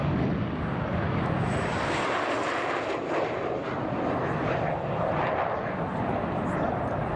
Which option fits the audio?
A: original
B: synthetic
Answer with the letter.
A